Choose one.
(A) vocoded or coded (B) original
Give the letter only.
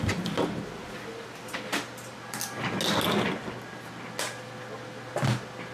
B